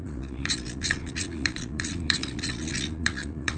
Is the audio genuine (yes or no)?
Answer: no